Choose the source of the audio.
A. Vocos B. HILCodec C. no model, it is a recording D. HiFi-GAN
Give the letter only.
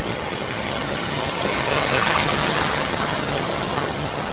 D